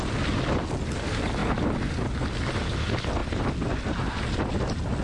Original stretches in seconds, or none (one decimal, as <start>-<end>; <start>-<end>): 0.0-5.0